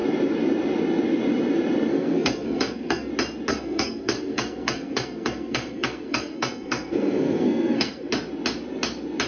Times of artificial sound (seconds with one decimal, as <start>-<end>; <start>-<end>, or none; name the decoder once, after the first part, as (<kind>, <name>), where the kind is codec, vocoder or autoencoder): 1.9-3.1 (codec, SNAC); 3.5-8.1